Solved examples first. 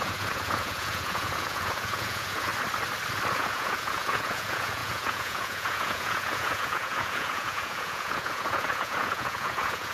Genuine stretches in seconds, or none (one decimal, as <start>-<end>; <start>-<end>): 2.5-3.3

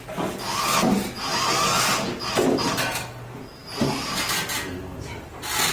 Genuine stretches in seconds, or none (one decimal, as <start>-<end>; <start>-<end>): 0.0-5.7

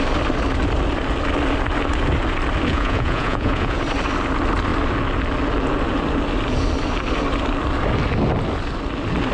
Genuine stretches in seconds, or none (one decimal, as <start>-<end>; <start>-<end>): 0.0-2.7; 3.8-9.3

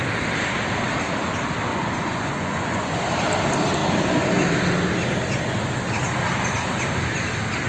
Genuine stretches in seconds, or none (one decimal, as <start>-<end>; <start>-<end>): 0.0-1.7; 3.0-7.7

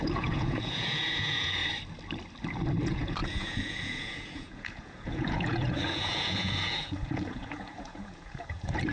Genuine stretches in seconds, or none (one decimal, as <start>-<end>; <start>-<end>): 1.6-2.8

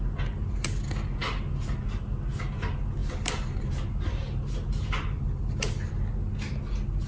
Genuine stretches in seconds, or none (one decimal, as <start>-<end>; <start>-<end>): 0.0-7.1

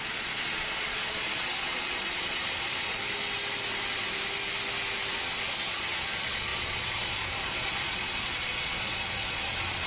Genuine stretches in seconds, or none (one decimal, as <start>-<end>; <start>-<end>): 2.9-5.1